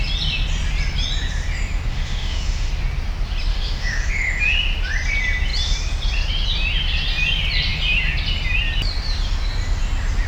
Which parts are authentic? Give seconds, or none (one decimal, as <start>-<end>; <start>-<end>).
0.0-1.9; 2.7-3.5; 4.1-10.3